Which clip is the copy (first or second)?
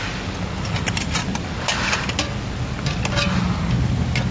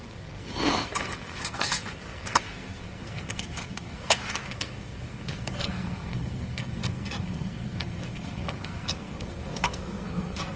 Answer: second